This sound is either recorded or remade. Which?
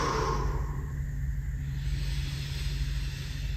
recorded